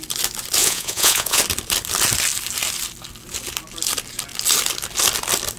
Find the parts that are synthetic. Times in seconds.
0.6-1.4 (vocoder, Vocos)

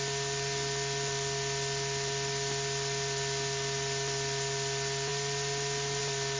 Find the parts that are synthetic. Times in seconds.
none

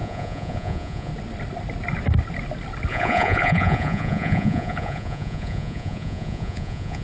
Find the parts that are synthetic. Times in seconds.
0.0-1.1 (vocoder, Vocos); 2.9-7.0